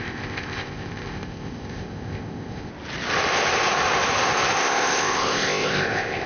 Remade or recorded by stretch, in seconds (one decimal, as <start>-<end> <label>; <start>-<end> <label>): 0.0-2.7 remade; 2.7-4.6 recorded; 4.6-6.3 remade